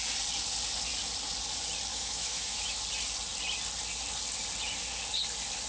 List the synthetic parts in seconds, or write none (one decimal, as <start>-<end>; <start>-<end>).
1.9-2.8